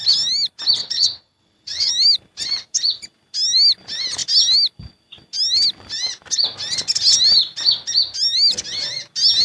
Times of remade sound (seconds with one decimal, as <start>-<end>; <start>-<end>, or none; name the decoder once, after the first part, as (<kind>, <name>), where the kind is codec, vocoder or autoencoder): 0.8-1.9 (vocoder, WaveNeXt)